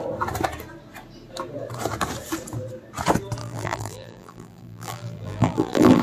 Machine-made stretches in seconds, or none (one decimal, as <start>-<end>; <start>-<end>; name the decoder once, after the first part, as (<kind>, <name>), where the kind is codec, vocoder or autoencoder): 3.4-6.0 (vocoder, BigVGAN v2)